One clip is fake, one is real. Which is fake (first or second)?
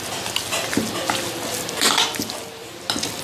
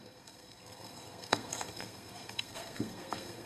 second